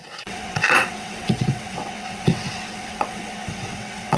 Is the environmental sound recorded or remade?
remade